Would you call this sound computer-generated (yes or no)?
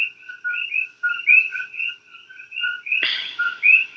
yes